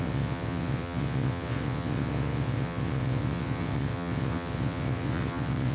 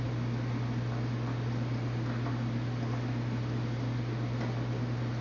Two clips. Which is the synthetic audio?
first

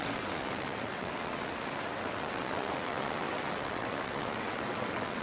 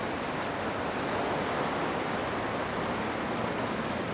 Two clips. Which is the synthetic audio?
first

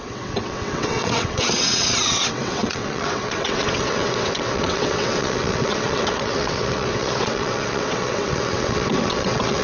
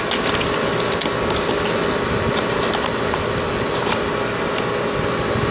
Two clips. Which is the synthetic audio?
first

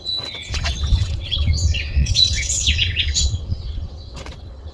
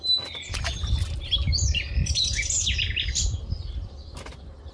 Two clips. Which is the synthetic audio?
first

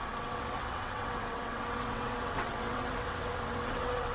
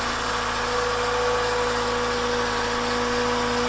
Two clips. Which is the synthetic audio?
first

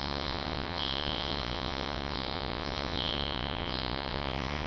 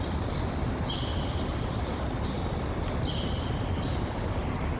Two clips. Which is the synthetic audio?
first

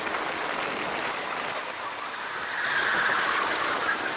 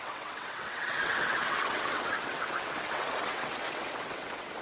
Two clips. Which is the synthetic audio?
second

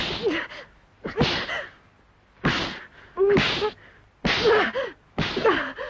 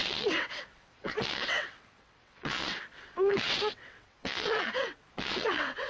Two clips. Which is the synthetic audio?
second